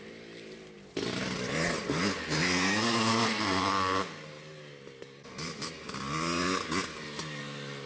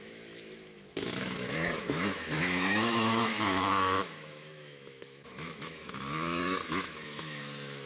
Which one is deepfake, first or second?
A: second